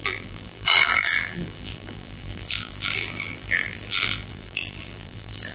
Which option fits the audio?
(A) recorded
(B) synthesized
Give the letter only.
B